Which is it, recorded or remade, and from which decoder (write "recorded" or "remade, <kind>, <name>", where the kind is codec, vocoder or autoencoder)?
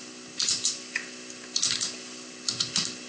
recorded